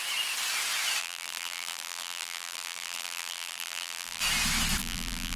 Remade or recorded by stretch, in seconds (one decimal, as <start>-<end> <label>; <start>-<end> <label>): 0.0-1.0 recorded; 1.0-4.2 remade; 4.2-4.8 recorded; 4.8-5.4 remade